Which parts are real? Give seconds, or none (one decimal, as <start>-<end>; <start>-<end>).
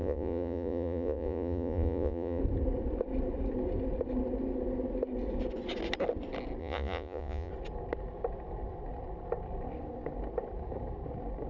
2.4-6.6; 7.5-11.5